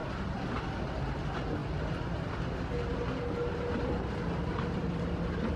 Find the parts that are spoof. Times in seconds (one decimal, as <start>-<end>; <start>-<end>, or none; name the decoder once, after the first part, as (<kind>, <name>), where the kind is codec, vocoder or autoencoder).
none

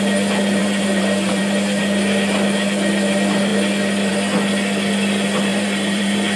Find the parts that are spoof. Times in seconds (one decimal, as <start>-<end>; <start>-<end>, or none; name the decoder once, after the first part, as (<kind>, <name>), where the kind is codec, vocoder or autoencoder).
0.6-1.4 (vocoder, BigVGAN v2); 5.5-6.4

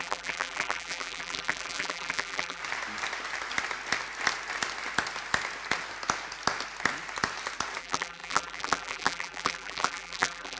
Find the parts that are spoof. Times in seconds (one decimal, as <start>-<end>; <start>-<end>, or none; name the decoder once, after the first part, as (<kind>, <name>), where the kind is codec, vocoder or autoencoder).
0.0-2.6 (vocoder, BigVGAN v2); 7.8-10.6

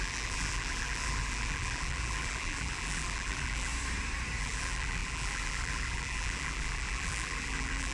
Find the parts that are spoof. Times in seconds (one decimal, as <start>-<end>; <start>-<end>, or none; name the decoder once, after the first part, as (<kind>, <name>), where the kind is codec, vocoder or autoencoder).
0.0-3.7 (vocoder, BigVGAN v2); 4.4-7.9

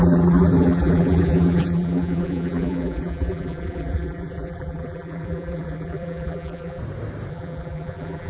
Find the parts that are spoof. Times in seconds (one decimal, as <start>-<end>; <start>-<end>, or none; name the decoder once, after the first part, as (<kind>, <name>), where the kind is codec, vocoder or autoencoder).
0.0-6.8 (vocoder, BigVGAN v2); 7.3-8.3

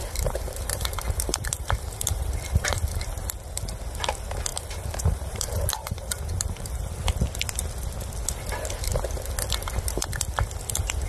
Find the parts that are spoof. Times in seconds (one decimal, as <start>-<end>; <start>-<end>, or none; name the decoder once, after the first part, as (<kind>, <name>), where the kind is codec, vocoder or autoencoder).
0.0-3.0 (vocoder, BigVGAN v2); 4.5-7.0